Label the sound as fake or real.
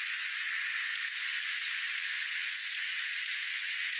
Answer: fake